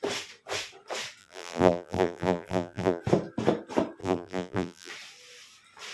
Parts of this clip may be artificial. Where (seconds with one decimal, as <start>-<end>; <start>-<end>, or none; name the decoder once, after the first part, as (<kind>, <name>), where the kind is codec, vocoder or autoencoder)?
1.2-3.0 (vocoder, BigVGAN v2); 4.0-4.9

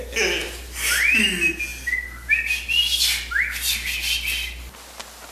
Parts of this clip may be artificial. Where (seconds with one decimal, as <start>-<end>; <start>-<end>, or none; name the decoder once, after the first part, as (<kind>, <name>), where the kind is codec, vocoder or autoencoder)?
0.4-1.2 (vocoder, BigVGAN v2)